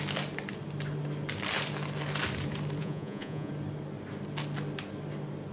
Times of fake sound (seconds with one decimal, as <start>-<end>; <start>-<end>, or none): 2.8-3.5